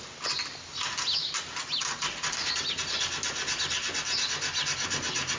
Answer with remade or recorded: recorded